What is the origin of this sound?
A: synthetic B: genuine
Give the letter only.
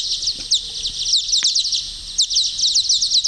B